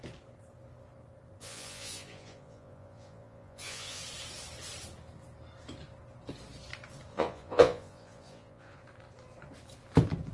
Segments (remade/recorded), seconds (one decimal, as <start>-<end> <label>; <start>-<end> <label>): 0.0-1.4 recorded; 1.4-4.0 remade; 4.0-7.1 recorded; 7.1-8.8 remade; 8.8-10.3 recorded